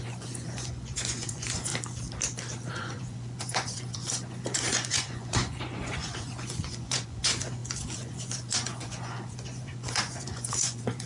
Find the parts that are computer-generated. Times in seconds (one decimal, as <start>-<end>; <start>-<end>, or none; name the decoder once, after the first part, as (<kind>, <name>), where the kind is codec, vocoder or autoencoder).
0.0-1.7 (vocoder, Vocos); 2.7-11.1